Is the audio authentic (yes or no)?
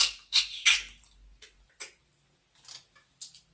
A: yes